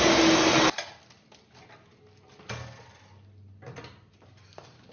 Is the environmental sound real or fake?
real